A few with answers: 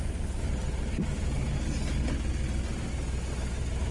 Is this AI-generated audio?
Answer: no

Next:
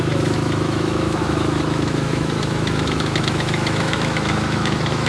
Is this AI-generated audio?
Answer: yes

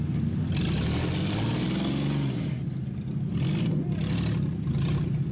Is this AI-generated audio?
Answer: no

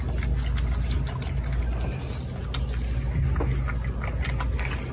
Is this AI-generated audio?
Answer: no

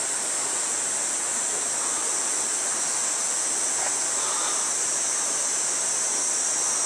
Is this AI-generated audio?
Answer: no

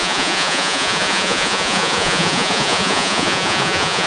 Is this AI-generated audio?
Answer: yes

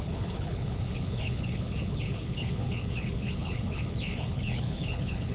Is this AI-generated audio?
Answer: yes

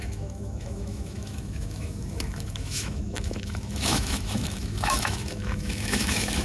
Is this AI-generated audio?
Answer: yes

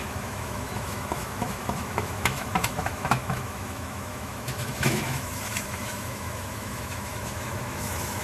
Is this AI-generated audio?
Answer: yes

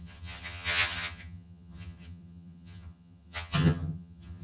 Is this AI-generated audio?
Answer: yes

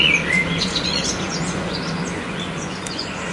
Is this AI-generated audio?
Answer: yes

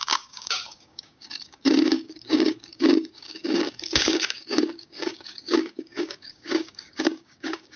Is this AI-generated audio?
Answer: yes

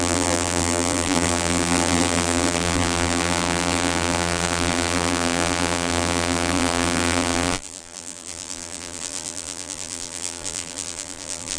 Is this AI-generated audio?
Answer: yes